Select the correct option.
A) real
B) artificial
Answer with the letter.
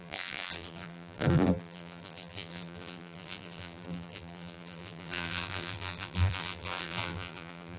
B